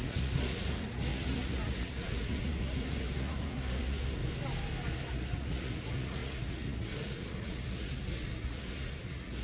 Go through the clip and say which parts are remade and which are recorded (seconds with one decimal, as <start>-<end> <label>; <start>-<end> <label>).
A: 0.0-4.2 remade; 4.2-5.1 recorded; 5.1-9.4 remade